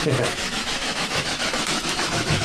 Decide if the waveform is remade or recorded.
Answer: remade